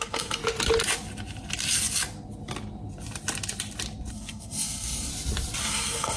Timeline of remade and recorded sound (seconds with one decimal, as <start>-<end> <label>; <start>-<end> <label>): 0.0-0.4 remade; 0.4-4.1 recorded; 4.1-5.1 remade; 5.1-5.6 recorded; 5.6-6.2 remade

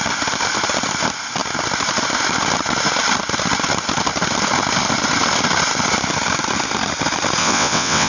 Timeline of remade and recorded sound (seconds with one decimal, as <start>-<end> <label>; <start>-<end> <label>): 0.0-7.4 recorded; 7.4-8.1 remade